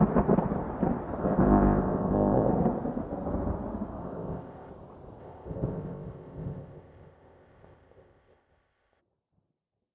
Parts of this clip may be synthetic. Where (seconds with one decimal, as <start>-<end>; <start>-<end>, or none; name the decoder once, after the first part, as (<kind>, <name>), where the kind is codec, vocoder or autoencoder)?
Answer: 1.2-2.5 (codec, ZipCodec); 4.0-4.7; 5.2-9.0